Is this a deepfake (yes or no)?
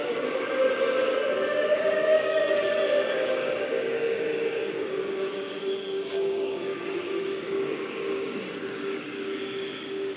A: yes